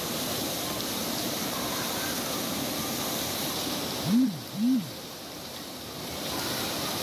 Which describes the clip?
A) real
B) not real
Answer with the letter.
B